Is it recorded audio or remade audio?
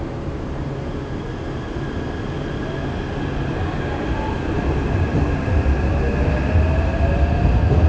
recorded